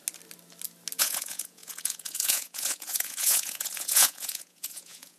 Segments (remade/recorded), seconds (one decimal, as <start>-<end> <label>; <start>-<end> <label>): 0.0-1.0 recorded; 1.0-5.2 remade